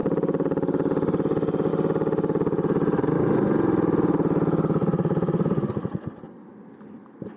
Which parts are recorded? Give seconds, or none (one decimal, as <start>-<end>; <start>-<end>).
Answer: 0.0-4.8; 5.7-7.4